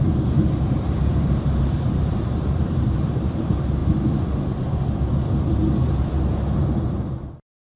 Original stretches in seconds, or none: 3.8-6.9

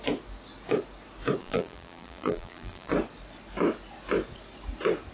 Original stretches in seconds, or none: 0.0-1.4; 2.9-5.1

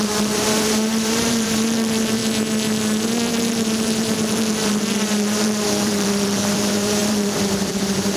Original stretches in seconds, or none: 2.2-3.3

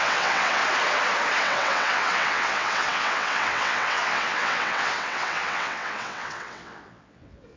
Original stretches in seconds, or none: 0.6-1.4

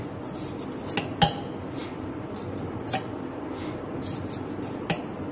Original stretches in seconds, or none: 0.0-5.3

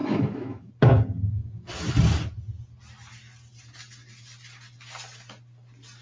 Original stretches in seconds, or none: 0.7-6.0

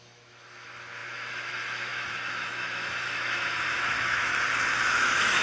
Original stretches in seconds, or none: 4.3-4.8